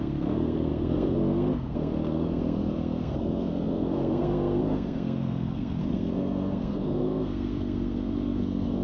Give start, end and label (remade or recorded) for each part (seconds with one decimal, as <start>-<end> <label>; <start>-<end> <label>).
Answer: 0.0-8.8 remade